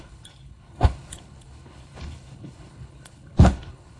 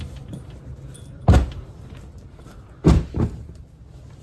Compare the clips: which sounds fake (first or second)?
first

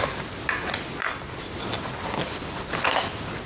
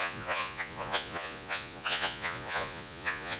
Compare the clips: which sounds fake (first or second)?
second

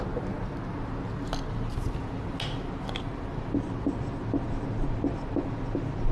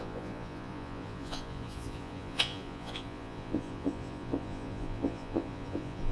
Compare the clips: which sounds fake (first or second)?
second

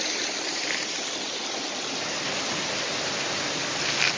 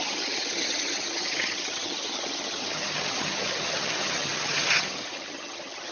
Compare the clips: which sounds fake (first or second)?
second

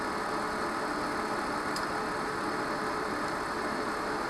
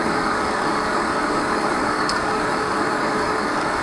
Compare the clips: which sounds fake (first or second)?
second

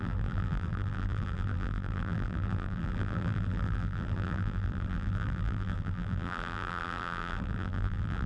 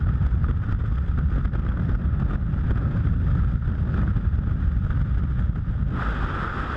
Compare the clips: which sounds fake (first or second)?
first